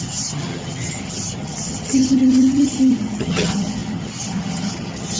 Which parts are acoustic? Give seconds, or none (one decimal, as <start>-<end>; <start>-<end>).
none